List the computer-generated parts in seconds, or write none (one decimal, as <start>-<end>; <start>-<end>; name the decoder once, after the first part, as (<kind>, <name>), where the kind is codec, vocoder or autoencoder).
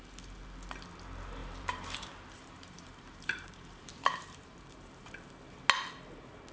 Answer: 1.4-5.3 (vocoder, BigVGAN v2)